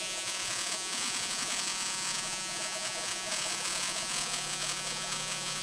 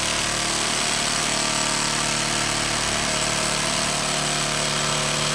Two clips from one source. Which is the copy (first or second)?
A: first